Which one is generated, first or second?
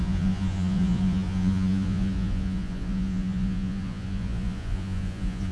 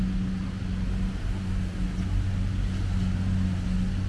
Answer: first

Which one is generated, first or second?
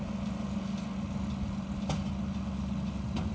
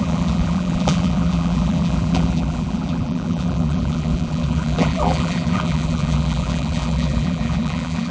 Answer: second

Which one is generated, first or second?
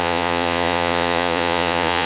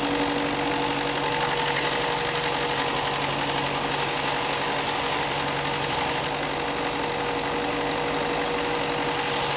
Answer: first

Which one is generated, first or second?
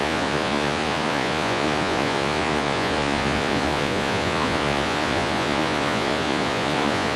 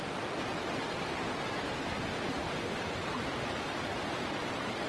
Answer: first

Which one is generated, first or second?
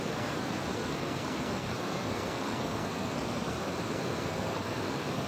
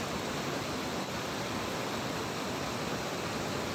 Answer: first